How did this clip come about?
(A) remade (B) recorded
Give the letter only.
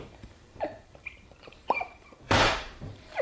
A